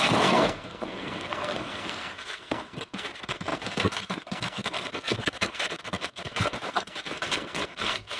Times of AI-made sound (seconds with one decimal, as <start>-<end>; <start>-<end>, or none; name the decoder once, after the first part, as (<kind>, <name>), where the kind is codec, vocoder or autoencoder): 0.0-8.2 (codec, SNAC)